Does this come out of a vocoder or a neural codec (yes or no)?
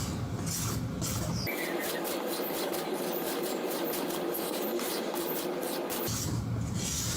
no